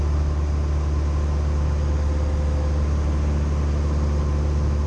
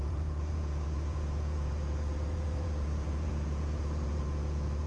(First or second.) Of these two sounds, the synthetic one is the second